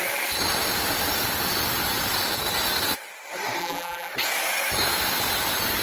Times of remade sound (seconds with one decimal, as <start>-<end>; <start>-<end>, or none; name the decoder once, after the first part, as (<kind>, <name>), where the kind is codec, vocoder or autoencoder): 3.6-4.1 (vocoder, BigVGAN v2)